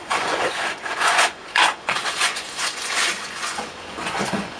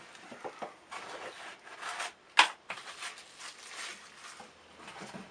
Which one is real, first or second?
second